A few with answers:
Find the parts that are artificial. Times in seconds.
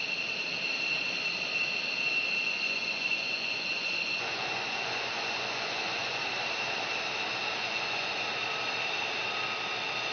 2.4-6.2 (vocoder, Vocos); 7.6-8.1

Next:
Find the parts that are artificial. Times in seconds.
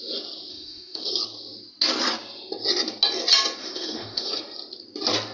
0.5-1.1 (autoencoder, DAC-VAE); 3.6-4.3